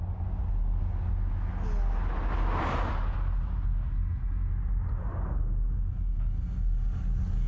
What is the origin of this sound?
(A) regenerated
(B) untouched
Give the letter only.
B